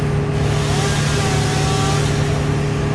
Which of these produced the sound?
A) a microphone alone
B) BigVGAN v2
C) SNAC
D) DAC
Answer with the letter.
A